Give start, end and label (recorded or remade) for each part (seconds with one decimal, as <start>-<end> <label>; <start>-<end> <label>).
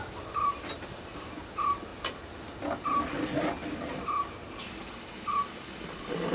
0.0-6.3 recorded